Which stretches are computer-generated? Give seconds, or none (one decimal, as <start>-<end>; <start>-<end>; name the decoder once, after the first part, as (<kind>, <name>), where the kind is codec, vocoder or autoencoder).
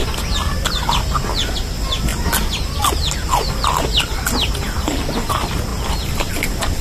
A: none